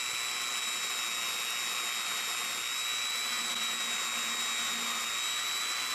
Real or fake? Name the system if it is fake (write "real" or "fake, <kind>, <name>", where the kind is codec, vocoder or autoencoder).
real